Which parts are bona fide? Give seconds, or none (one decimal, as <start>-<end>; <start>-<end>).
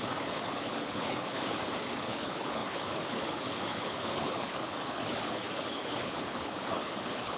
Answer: none